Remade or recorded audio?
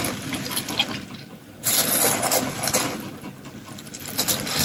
recorded